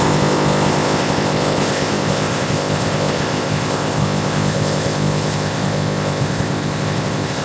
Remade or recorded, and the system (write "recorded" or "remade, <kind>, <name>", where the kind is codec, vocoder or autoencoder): remade, codec, ZipCodec